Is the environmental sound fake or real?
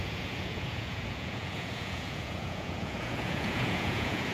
fake